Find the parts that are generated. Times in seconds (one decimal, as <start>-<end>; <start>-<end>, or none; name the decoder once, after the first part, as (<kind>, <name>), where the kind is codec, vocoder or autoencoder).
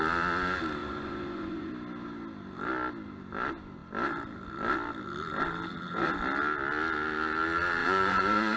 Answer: 0.8-1.7 (vocoder, Vocos); 7.8-8.6